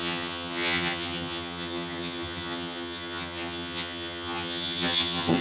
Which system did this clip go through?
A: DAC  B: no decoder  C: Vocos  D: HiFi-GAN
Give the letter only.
D